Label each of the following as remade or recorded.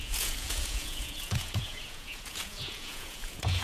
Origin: remade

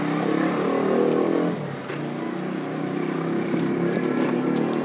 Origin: recorded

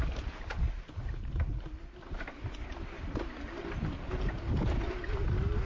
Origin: recorded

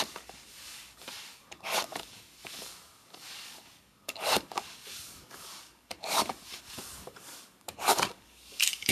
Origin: remade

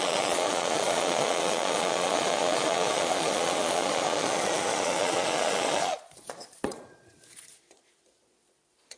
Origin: remade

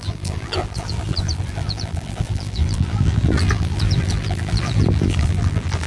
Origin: remade